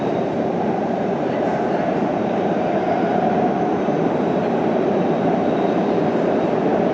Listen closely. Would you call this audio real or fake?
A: fake